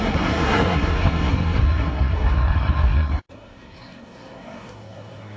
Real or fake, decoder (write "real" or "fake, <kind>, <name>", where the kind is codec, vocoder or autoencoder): fake, codec, SNAC